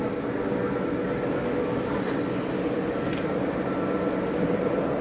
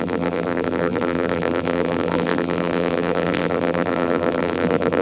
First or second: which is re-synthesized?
second